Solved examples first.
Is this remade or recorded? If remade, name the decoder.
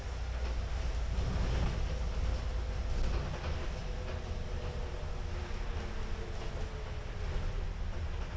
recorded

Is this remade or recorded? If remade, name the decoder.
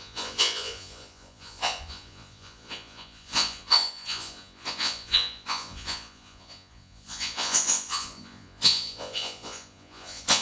remade, vocoder, Vocos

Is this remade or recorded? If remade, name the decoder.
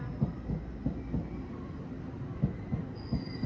recorded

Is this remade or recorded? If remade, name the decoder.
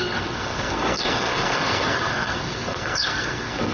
remade, codec, SNAC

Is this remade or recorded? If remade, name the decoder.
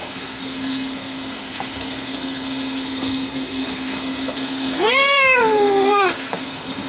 remade, codec, SNAC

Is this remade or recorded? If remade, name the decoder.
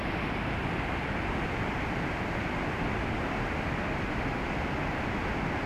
recorded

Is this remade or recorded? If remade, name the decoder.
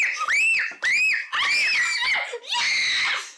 recorded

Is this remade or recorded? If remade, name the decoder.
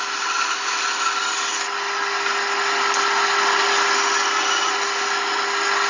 recorded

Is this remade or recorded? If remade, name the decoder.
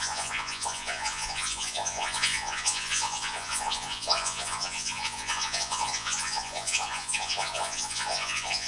remade, vocoder, Vocos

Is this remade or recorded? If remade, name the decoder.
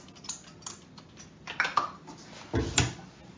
recorded